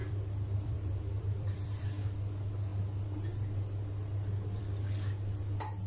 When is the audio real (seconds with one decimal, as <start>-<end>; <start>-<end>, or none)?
1.8-5.9